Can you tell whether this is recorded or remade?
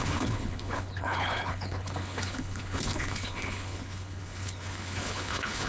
remade